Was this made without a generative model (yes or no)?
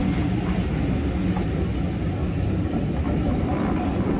yes